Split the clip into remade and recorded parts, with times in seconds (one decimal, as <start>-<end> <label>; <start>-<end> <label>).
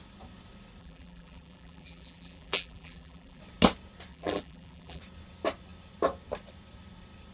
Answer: 0.0-0.8 recorded; 0.8-3.4 remade; 3.4-4.1 recorded; 4.1-5.0 remade; 5.0-7.3 recorded